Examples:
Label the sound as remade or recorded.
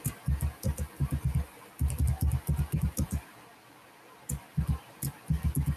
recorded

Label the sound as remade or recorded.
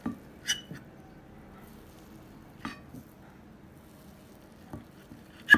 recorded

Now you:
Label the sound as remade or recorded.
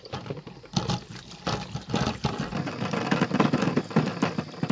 recorded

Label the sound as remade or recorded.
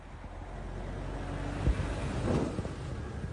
recorded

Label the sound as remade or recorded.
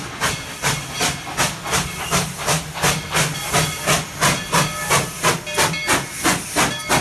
recorded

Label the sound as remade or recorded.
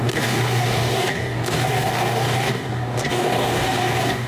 remade